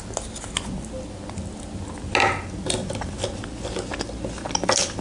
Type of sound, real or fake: real